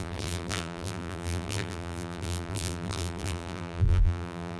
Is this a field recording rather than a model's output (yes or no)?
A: no